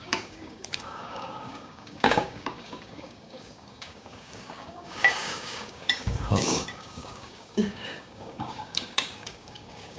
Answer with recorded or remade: remade